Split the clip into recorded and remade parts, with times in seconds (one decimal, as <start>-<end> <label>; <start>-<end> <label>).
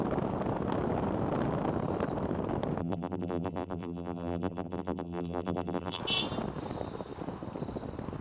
0.0-2.8 recorded; 2.8-6.0 remade; 6.0-8.2 recorded